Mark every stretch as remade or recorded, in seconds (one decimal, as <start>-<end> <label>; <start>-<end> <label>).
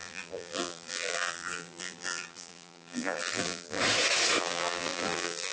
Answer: 0.0-3.8 remade; 3.8-4.4 recorded; 4.4-5.5 remade